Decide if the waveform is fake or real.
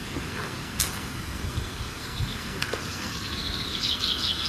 fake